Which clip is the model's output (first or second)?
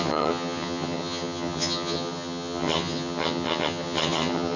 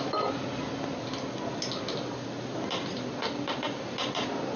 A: first